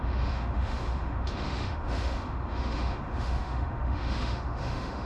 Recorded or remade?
remade